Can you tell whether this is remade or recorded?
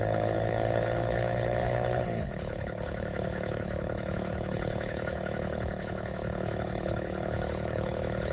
remade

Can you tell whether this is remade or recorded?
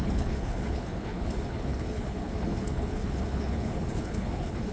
remade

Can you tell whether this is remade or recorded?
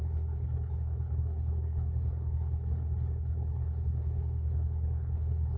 remade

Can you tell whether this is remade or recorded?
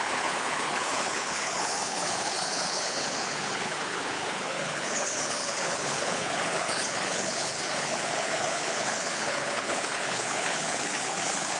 remade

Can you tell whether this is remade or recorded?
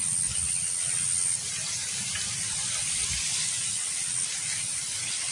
recorded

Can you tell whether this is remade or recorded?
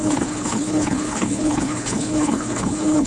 remade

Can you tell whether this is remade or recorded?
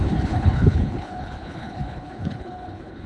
remade